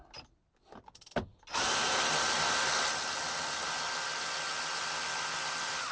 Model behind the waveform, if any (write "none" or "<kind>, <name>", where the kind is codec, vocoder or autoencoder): none